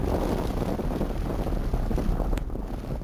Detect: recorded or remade recorded